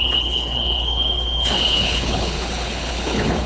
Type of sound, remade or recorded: remade